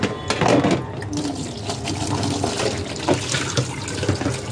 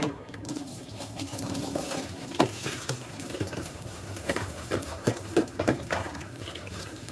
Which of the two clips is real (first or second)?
first